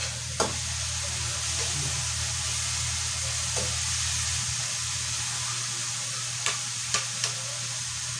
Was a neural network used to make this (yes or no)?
no